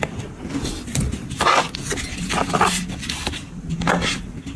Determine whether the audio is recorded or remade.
remade